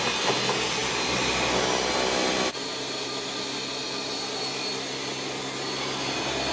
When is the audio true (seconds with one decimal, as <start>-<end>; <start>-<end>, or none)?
0.0-6.5